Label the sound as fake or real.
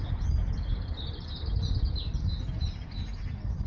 real